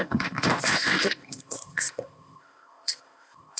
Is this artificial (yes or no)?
yes